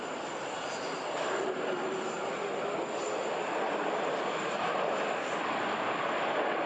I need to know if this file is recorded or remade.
recorded